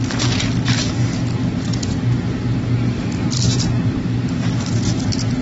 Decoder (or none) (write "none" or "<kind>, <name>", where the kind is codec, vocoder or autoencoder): none